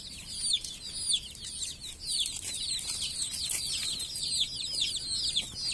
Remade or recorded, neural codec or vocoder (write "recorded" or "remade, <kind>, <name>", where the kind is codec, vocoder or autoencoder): recorded